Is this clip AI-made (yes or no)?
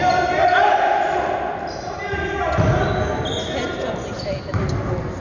no